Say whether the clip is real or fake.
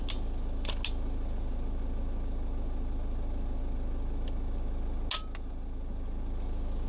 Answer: real